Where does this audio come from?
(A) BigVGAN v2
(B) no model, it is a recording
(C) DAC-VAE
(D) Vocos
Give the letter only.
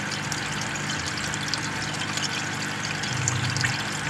B